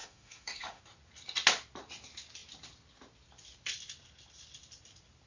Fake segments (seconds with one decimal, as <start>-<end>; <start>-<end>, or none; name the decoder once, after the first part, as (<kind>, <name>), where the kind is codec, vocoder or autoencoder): 0.0-0.8 (autoencoder, DAC-VAE)